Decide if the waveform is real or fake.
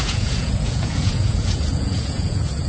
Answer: fake